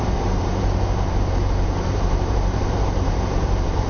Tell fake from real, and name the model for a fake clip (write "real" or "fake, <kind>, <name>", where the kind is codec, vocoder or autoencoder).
fake, vocoder, BigVGAN v2